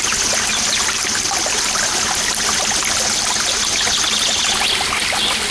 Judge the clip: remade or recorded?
recorded